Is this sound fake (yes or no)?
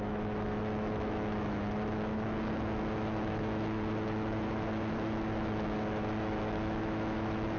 yes